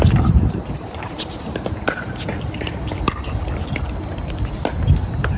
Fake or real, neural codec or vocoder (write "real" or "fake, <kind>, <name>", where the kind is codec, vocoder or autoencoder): fake, vocoder, BigVGAN v2